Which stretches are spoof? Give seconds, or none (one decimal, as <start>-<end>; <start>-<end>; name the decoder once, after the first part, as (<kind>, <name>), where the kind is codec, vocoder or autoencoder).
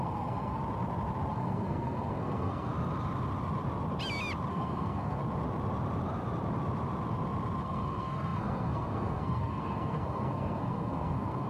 0.0-0.6 (codec, SNAC); 1.3-2.7; 4.5-5.2; 7.6-11.5